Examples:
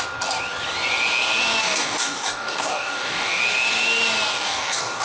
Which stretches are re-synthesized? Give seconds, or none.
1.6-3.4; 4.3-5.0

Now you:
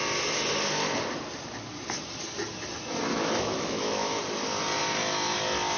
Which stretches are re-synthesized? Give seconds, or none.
3.1-4.2

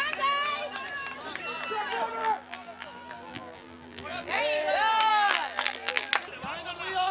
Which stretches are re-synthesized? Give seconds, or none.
2.2-4.4; 5.1-6.1

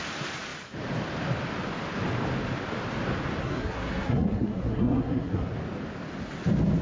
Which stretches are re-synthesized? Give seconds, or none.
3.4-5.5